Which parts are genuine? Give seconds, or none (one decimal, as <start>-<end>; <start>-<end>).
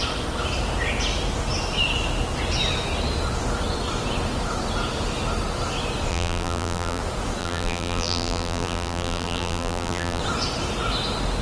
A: 0.0-6.1; 7.0-7.4; 10.2-11.4